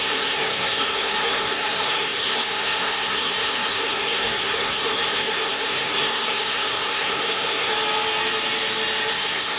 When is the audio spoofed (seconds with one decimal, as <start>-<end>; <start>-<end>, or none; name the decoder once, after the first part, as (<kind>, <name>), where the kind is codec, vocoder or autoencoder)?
0.0-7.7 (codec, SNAC); 9.1-9.6